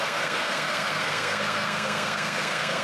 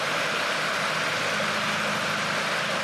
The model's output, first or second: first